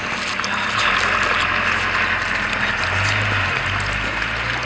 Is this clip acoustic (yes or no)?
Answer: yes